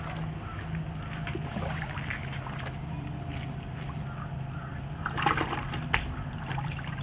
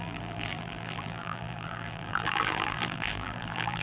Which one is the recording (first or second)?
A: first